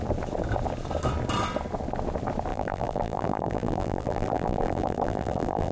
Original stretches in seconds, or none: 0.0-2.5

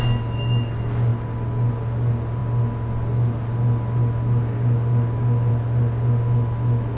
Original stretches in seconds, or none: 0.0-7.0